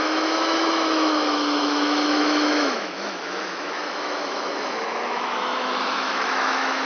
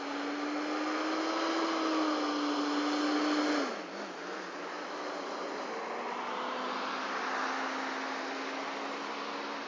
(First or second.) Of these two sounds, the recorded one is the second